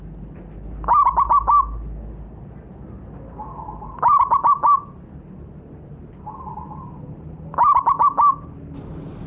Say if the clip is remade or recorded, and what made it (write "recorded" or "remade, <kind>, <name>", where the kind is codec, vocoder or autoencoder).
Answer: recorded